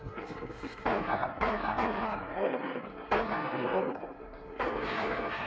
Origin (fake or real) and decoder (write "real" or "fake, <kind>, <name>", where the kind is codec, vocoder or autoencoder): fake, codec, SNAC